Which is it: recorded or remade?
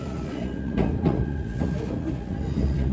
remade